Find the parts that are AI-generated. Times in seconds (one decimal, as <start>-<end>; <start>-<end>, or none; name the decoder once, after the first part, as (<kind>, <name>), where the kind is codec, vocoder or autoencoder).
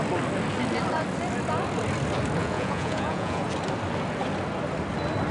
2.4-3.4 (vocoder, Vocos)